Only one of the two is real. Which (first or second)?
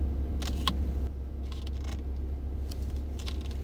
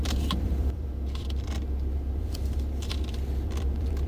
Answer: first